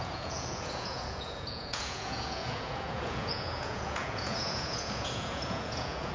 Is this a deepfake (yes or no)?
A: yes